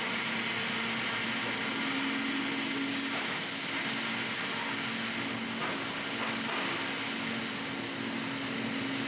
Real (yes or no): yes